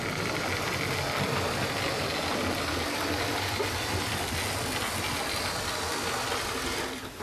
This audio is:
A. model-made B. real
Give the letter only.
B